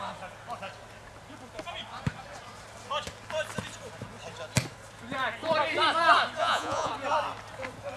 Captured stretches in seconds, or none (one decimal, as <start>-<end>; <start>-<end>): 0.0-6.4; 6.9-8.0